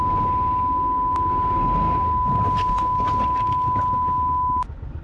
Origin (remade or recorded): recorded